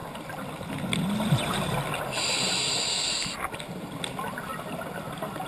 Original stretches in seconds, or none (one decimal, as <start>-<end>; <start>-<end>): 0.0-5.5